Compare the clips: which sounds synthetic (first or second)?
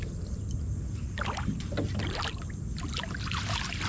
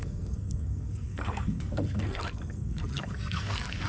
second